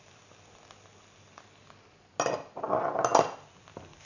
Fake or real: real